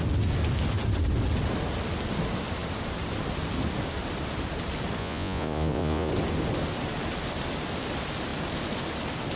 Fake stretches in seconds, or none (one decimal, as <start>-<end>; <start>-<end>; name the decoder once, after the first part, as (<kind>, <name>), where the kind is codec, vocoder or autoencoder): 5.0-6.1 (vocoder, Vocos)

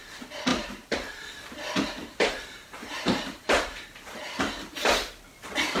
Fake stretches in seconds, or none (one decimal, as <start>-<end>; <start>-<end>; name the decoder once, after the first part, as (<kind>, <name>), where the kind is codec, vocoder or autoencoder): 0.5-1.2 (vocoder, BigVGAN v2); 2.0-4.2

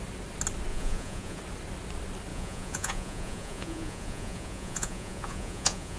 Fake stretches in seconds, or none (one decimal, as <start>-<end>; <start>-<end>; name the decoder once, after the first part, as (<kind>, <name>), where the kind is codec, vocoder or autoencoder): 0.7-1.4 (vocoder, Vocos); 2.3-6.0

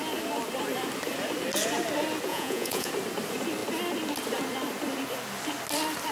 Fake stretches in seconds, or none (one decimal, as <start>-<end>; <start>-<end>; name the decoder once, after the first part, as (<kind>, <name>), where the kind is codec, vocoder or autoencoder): 2.3-2.9 (vocoder, Vocos)

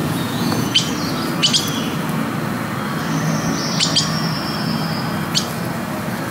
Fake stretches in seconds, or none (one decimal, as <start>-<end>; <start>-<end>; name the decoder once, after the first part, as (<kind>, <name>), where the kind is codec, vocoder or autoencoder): 0.0-0.9 (vocoder, Vocos)

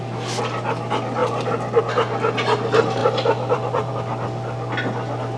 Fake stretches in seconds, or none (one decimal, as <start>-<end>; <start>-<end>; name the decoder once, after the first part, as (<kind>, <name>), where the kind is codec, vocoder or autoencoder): 1.2-1.8 (vocoder, BigVGAN v2); 3.0-3.9

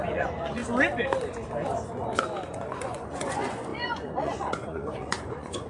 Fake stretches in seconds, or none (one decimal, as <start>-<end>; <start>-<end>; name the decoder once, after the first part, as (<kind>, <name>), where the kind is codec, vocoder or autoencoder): 0.0-0.6 (vocoder, Vocos); 2.5-5.7